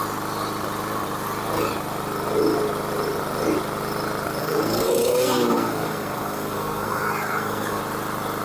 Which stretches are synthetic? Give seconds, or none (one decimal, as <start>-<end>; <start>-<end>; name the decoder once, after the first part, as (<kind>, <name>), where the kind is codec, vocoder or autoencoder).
4.4-7.8 (codec, SNAC)